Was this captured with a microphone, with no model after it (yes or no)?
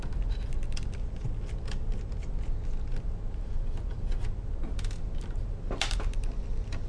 yes